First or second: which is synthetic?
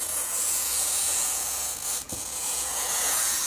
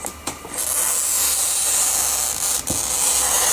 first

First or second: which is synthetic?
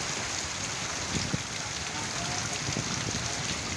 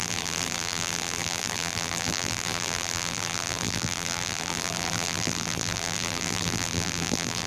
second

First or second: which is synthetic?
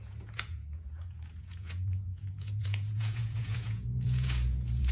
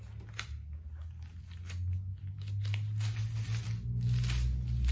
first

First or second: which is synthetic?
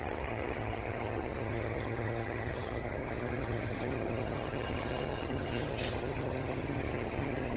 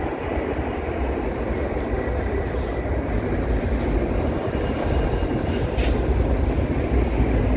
first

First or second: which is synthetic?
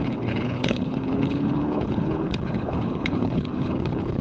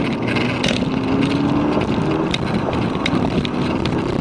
first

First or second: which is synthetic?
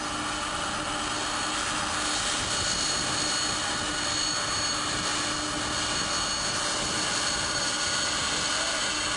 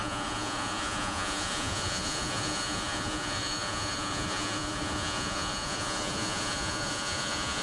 second